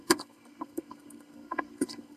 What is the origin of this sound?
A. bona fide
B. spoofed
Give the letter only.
B